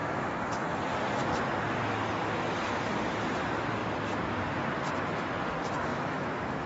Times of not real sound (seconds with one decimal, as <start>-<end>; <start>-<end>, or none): 0.0-0.8; 5.9-6.7